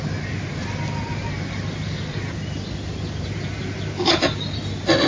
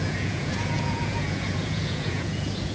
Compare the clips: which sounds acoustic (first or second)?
first